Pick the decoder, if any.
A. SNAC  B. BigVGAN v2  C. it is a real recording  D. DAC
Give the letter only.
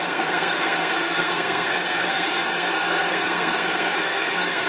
A